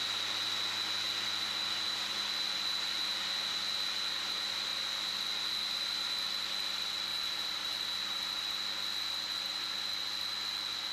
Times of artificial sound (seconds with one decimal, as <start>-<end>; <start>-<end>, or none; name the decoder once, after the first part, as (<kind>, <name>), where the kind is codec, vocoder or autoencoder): 7.1-8.2 (vocoder, BigVGAN v2)